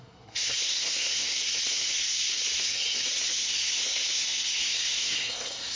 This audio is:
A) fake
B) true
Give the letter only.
A